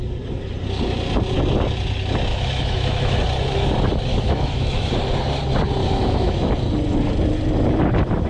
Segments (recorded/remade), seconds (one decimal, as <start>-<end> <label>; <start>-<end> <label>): 0.0-2.3 recorded; 2.3-3.2 remade; 3.2-4.1 recorded; 4.1-4.9 remade; 4.9-5.8 recorded; 5.8-6.5 remade; 6.5-8.3 recorded